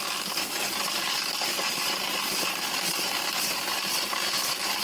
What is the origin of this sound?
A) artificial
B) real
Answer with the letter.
A